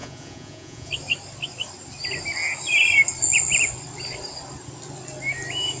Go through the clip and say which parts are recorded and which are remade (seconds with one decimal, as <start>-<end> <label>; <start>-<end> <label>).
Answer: 0.0-0.9 remade; 0.9-5.8 recorded